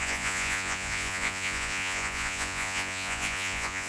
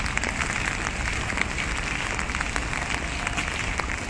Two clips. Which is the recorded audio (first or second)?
second